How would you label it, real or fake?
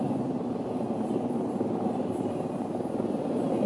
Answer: real